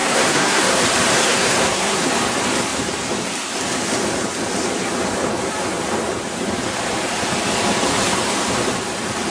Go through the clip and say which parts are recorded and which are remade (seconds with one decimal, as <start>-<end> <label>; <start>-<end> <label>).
0.0-0.6 remade; 0.6-1.1 recorded; 1.1-2.1 remade; 2.1-9.3 recorded